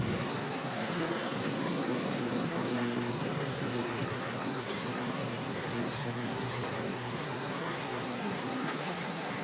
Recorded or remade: remade